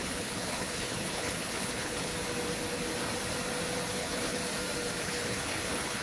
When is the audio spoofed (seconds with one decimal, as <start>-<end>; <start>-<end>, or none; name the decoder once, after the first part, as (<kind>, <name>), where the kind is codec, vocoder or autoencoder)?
0.0-2.1 (codec, HILCodec); 3.9-4.4; 5.0-6.0